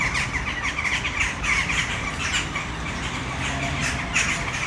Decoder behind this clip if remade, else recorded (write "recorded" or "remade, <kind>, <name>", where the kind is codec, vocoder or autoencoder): recorded